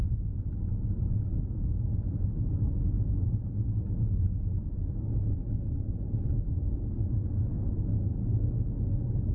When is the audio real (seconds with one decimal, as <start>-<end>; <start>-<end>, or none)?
0.0-9.3